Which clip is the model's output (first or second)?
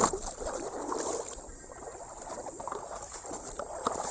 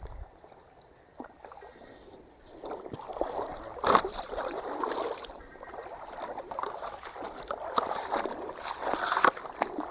second